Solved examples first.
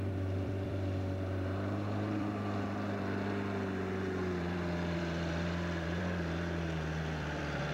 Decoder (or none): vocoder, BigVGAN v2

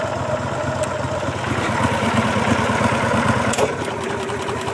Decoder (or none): none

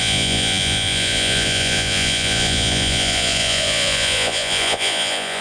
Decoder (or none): vocoder, Vocos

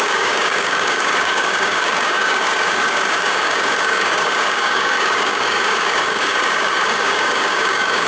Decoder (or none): codec, DAC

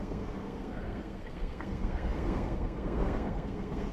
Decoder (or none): codec, SNAC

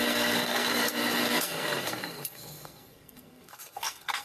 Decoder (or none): codec, SNAC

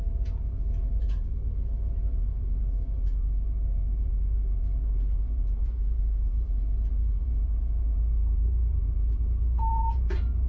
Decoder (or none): vocoder, Vocos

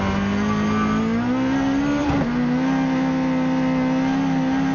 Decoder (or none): none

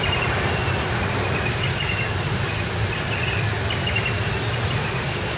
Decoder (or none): none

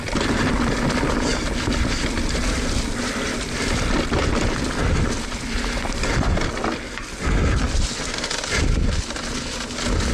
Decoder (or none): none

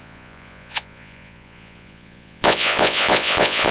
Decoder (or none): vocoder, Vocos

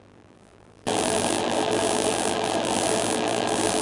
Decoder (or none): vocoder, BigVGAN v2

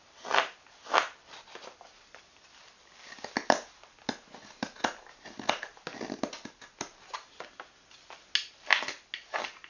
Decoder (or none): none